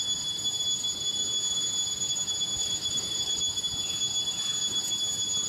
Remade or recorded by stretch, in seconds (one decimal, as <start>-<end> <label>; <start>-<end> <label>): 0.0-2.6 recorded; 2.6-3.4 remade; 3.4-5.5 recorded